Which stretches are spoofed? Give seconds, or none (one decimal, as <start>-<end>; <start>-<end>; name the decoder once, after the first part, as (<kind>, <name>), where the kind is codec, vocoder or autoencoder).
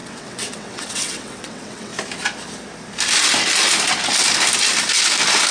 0.0-1.9 (vocoder, WaveNeXt)